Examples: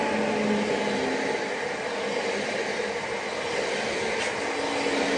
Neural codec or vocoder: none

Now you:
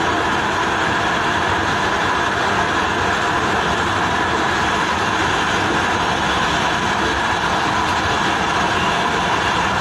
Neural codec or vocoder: none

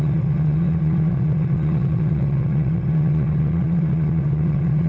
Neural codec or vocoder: vocoder, WaveNeXt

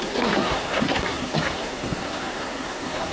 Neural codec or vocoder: codec, SNAC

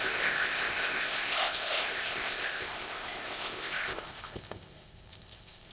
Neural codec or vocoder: codec, ZipCodec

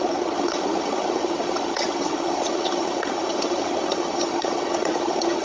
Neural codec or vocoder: vocoder, HiFi-GAN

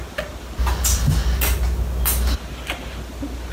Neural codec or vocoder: none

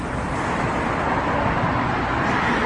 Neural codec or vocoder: none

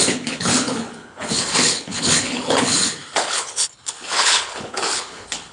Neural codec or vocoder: codec, HILCodec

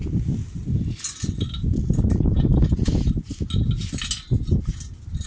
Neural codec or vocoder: none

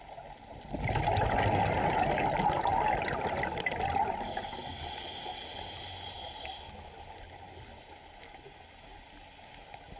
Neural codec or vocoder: none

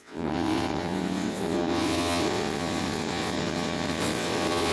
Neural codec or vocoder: vocoder, WaveNeXt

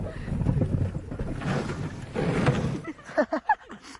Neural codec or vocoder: none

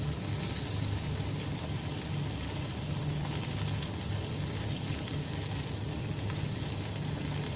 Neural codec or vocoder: none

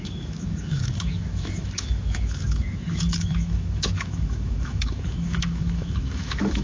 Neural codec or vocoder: autoencoder, DAC-VAE